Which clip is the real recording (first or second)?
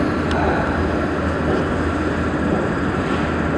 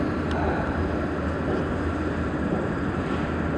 first